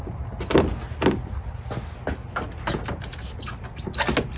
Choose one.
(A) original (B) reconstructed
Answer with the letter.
A